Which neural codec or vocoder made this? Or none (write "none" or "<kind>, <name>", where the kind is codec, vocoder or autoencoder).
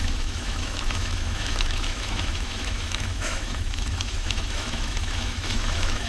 autoencoder, DAC-VAE